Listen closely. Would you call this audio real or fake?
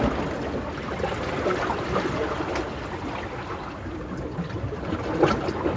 real